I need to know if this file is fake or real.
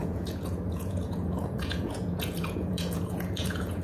fake